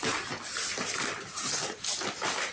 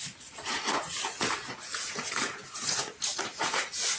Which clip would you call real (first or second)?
first